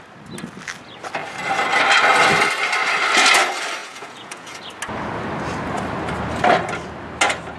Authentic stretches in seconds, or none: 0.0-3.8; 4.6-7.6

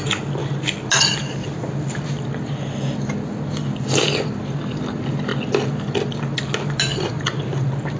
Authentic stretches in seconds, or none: 0.0-8.0